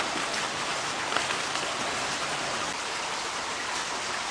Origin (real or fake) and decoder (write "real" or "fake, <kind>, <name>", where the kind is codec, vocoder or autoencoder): real